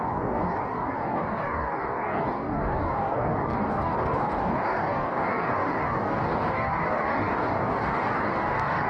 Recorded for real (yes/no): no